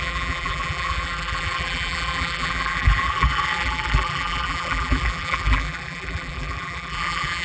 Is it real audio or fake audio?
fake